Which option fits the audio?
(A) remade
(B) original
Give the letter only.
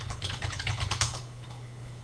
A